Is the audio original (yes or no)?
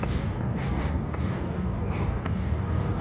no